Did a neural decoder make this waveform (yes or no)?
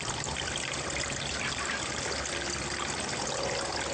no